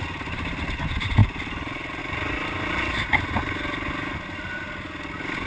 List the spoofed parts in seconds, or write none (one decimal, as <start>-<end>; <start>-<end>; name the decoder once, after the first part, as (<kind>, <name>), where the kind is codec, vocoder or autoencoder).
1.2-2.0 (vocoder, BigVGAN v2)